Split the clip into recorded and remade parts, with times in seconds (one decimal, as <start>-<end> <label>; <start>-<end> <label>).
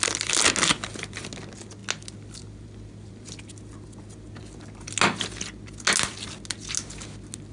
0.0-7.5 recorded